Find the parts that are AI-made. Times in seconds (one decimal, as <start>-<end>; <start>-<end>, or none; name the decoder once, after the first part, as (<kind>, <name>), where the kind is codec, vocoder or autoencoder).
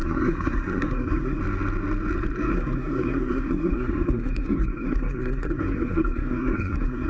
0.0-1.4 (codec, SNAC); 2.5-7.1